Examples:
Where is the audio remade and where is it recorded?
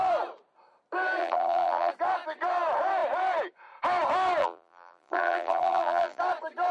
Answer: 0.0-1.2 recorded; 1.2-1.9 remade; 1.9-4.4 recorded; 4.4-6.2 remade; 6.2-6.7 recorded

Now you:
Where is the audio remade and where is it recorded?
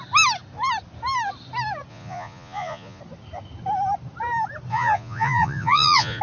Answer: 0.0-1.9 recorded; 1.9-3.0 remade; 3.0-4.7 recorded; 4.7-6.2 remade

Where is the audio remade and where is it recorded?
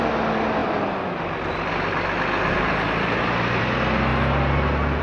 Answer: 0.0-5.0 recorded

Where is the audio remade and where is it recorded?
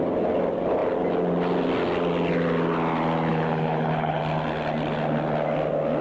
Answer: 0.0-3.3 recorded; 3.3-4.2 remade; 4.2-6.0 recorded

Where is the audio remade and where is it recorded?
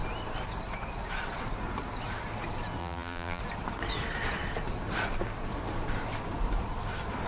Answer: 0.0-2.8 recorded; 2.8-3.4 remade; 3.4-7.3 recorded